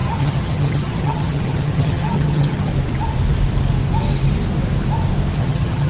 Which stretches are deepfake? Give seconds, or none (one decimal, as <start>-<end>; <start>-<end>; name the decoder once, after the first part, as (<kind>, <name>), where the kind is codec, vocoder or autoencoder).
0.0-2.7 (vocoder, HiFi-GAN); 5.4-5.9